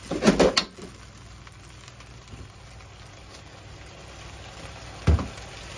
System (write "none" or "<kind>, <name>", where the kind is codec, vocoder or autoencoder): none